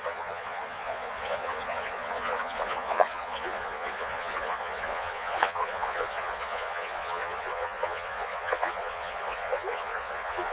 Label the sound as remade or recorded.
remade